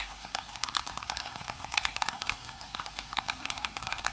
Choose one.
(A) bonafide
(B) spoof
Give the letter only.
B